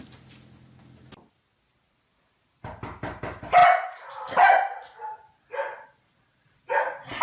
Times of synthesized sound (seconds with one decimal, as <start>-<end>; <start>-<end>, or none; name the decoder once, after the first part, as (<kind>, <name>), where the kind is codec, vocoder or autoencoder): none